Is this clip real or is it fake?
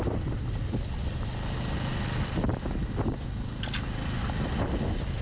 real